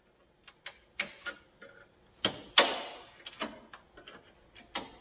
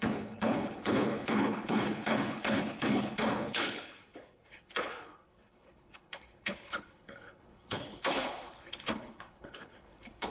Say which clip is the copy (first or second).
second